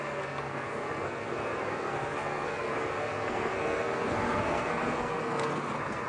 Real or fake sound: fake